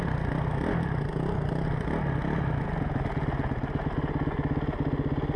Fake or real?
real